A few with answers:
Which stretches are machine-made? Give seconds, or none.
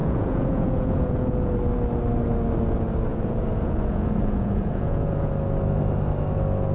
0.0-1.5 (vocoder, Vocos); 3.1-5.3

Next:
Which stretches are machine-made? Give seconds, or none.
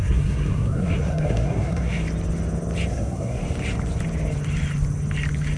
0.0-2.0 (codec, SNAC); 2.9-3.4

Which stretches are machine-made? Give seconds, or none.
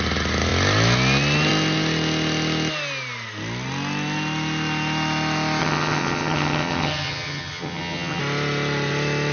5.6-8.2 (vocoder, HiFi-GAN)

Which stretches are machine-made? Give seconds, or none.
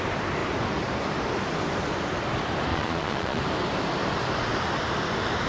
2.7-3.4 (vocoder, Vocos)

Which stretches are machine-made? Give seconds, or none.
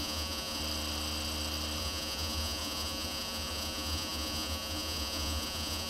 0.0-0.6 (vocoder, Vocos); 1.8-5.9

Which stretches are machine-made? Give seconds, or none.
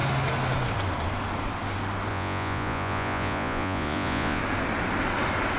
2.1-4.4 (vocoder, Vocos)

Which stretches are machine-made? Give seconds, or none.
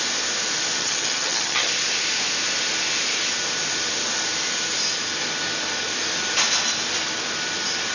0.8-1.7 (vocoder, HiFi-GAN)